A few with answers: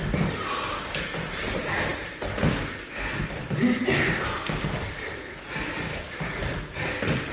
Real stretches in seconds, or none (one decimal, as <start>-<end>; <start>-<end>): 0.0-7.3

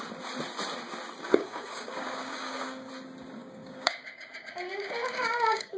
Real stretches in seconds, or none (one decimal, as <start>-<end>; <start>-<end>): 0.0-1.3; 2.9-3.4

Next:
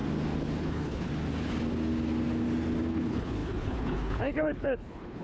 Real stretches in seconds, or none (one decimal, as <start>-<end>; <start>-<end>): 0.0-0.6; 1.1-2.9

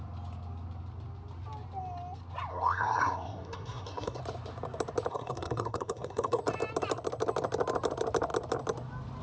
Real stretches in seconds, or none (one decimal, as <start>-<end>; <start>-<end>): 0.0-2.5; 4.2-5.1; 6.4-9.2